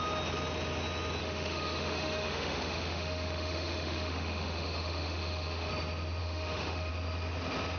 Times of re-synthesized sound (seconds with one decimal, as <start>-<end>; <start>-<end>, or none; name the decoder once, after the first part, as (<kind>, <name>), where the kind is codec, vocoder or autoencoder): 1.2-5.7 (autoencoder, DAC-VAE); 6.2-6.9